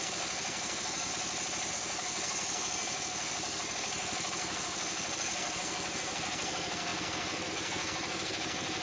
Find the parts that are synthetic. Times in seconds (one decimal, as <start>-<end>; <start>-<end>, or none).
0.0-1.1; 1.7-8.8